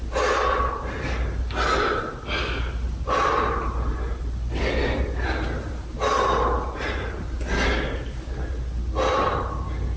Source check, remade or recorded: recorded